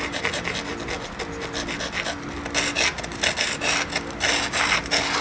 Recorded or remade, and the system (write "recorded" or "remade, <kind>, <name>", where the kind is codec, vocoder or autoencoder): recorded